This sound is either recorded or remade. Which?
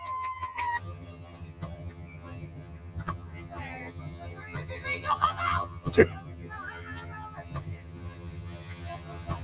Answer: remade